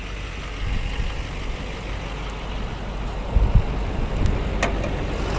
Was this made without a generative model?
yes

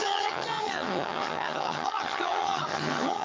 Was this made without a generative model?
no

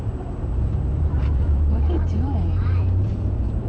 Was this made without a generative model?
no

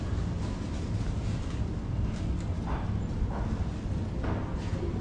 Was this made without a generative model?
yes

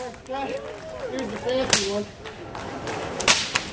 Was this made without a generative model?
yes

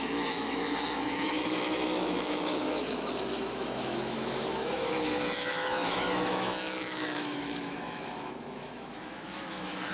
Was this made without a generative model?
no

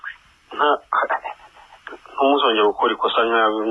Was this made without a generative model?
yes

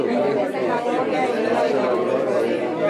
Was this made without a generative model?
no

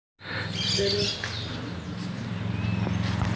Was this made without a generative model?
yes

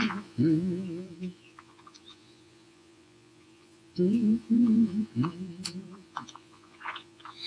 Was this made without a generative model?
no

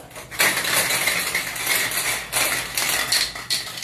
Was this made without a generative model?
yes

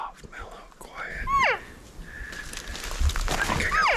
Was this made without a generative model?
yes